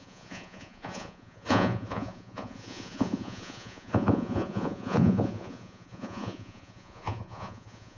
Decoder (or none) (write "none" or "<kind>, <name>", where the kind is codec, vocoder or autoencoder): vocoder, Vocos